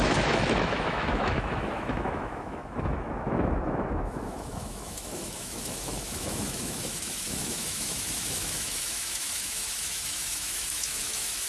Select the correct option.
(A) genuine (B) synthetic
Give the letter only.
B